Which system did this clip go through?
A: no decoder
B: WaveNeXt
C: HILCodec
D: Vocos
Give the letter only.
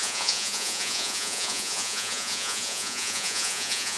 D